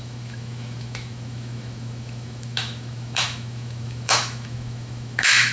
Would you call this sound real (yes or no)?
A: no